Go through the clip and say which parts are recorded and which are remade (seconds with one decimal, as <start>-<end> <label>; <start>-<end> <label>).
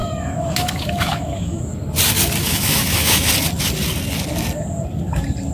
0.0-1.6 remade; 1.6-2.4 recorded; 2.4-3.3 remade; 3.3-5.5 recorded